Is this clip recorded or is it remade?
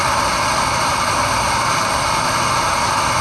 recorded